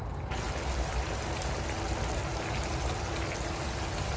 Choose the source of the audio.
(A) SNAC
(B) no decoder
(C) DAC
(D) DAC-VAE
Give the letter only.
B